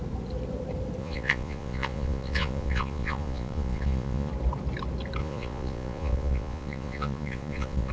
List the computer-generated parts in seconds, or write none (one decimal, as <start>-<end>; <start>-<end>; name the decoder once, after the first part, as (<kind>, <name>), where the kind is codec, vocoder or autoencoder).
1.0-4.3 (vocoder, Vocos); 5.2-7.9